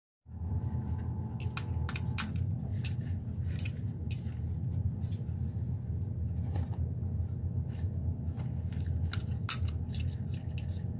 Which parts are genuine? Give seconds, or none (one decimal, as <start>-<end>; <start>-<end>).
0.0-11.0